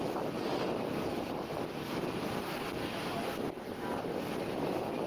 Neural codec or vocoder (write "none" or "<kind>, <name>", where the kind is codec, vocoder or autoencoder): none